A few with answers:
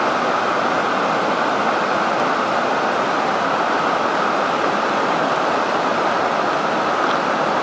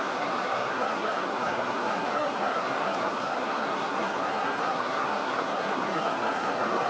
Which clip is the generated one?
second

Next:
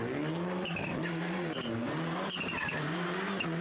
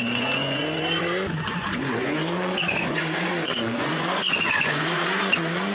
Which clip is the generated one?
second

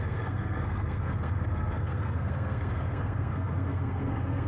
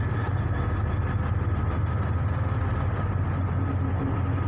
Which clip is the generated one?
first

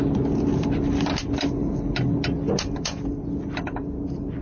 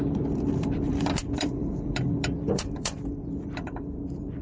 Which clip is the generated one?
second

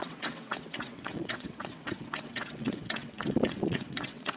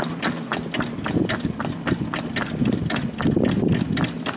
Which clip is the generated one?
first